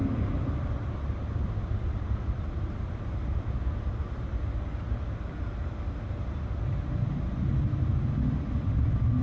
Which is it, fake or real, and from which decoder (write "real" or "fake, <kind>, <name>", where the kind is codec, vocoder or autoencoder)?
real